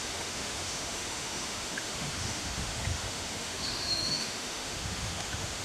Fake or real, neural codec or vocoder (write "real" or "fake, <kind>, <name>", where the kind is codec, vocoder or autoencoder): fake, autoencoder, DAC-VAE